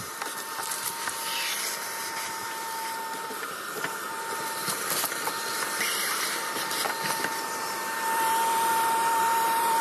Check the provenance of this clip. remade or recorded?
remade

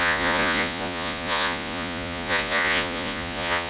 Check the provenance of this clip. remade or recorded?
remade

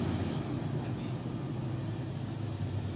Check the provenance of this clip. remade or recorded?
recorded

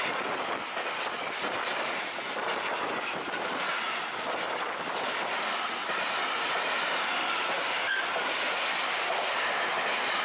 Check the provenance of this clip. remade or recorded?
recorded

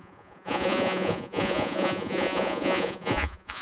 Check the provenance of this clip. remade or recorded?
remade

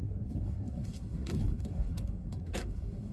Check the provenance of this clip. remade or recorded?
remade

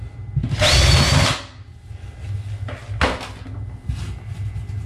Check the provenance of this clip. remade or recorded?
recorded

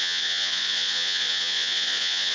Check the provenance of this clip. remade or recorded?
remade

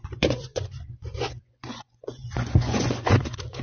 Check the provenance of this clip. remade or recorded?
remade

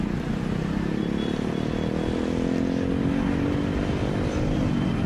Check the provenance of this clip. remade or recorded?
recorded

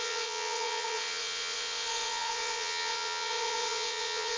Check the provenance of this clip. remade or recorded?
remade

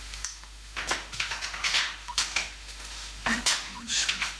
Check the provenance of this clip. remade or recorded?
remade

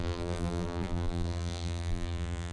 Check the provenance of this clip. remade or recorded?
remade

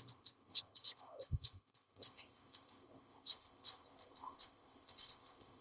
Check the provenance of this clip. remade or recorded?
remade